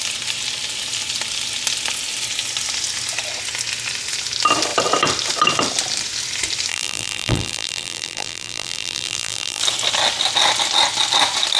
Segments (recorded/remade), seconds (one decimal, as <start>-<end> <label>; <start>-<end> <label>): 0.0-6.7 recorded; 6.7-9.6 remade; 9.6-11.6 recorded